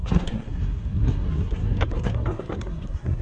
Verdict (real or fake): fake